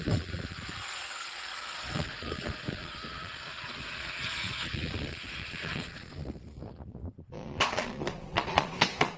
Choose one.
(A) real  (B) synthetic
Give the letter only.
B